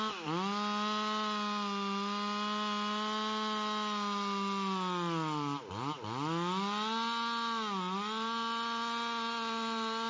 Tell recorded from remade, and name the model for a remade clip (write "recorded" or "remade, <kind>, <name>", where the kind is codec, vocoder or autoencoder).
recorded